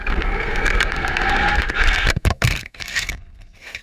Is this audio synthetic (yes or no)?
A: yes